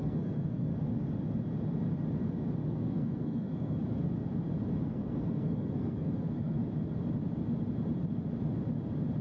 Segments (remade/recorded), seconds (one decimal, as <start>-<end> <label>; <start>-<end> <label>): 0.0-0.7 remade; 0.7-2.7 recorded; 2.7-3.8 remade; 3.8-4.8 recorded; 4.8-6.6 remade; 6.6-9.2 recorded